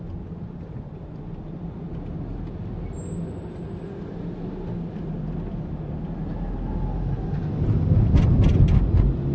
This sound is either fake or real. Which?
real